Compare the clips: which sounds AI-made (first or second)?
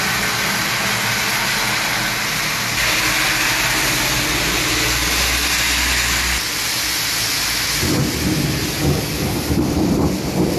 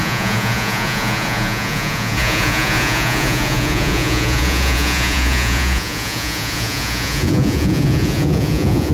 second